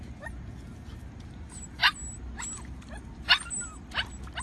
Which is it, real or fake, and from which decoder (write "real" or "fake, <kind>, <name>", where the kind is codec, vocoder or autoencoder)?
real